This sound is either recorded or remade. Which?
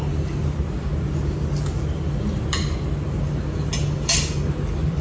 recorded